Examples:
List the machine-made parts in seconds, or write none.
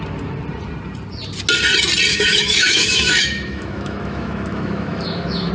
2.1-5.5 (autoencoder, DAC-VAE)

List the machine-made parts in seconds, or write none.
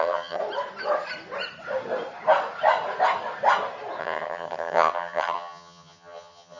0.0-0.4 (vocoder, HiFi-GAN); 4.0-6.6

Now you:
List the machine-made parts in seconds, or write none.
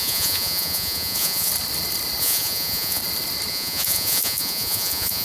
0.0-1.5 (vocoder, Vocos); 2.2-3.0; 3.5-5.2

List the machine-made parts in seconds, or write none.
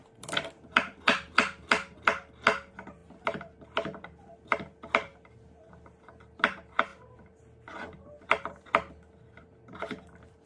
none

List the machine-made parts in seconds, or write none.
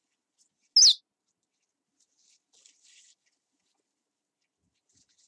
none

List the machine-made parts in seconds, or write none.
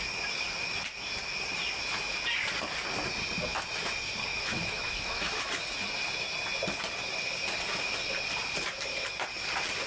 4.3-5.5 (autoencoder, DAC-VAE)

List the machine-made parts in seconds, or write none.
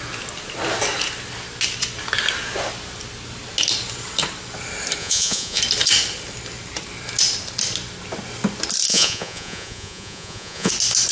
5.0-5.6 (vocoder, Vocos); 8.9-10.7